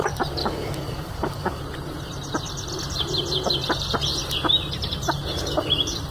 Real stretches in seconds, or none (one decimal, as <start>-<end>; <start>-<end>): 0.0-0.4; 1.6-6.1